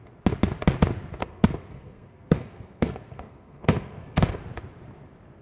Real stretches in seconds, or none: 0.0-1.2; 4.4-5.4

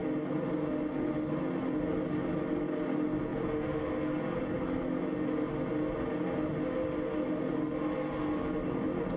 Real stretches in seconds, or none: 0.0-9.2

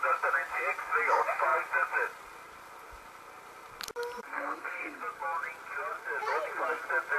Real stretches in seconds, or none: 0.0-4.3; 5.0-7.2

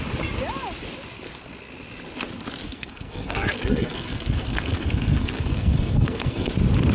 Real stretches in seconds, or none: 0.0-2.6; 6.5-6.9